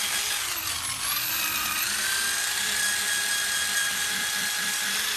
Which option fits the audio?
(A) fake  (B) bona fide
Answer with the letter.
B